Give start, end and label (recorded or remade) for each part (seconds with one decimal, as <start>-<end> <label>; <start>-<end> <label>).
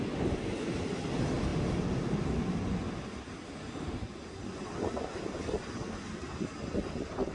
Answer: 0.0-7.3 recorded